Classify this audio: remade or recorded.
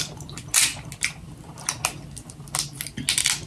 recorded